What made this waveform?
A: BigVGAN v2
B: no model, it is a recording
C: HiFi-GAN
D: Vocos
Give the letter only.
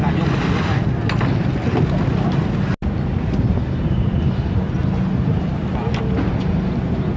B